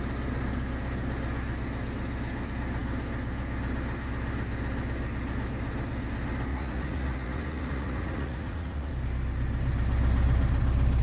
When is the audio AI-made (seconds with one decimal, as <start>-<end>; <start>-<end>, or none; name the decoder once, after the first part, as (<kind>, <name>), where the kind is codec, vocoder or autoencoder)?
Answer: 6.5-8.9 (vocoder, Vocos)